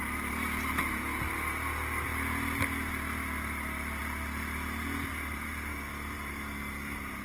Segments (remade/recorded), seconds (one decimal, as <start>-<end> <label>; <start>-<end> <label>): 0.0-7.2 recorded